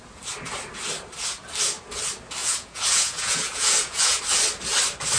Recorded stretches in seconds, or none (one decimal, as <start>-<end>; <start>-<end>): 0.0-2.4; 4.2-5.2